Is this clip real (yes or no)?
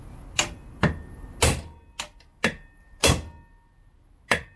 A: yes